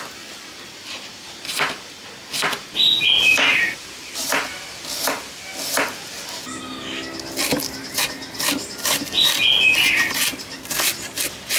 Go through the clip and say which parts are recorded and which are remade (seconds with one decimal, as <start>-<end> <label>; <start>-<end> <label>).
0.0-11.6 recorded